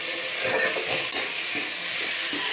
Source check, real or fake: real